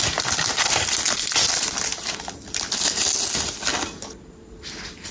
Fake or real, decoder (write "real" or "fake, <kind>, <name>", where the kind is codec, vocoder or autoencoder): real